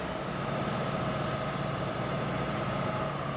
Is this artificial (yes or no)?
yes